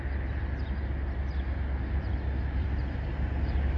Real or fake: real